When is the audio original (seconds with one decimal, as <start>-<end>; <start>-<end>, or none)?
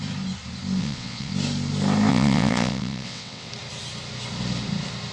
0.0-0.8; 1.3-2.1; 3.5-5.1